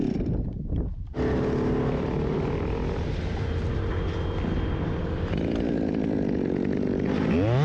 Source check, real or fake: real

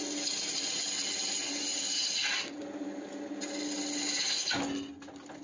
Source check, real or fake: real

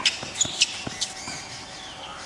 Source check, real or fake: real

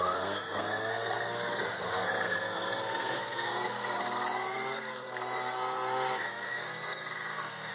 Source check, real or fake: fake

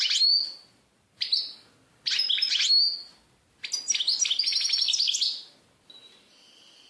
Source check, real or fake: real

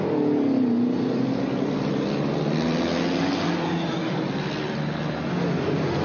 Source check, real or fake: real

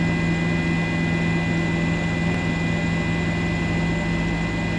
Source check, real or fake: real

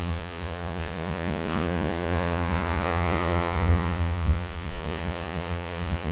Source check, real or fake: fake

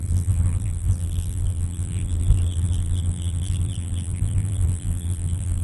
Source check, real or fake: fake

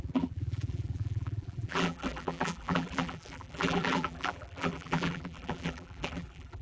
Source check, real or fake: fake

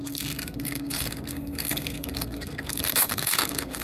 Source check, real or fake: fake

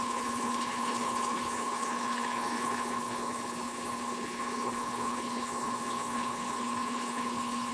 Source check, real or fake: fake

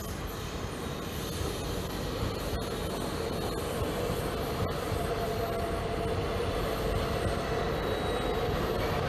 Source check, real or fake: real